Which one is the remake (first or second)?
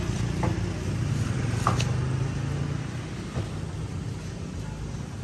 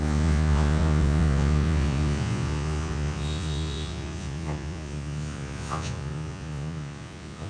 second